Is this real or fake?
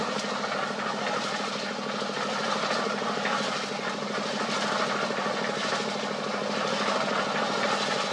real